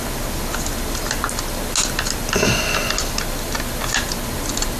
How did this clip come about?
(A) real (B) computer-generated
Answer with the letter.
A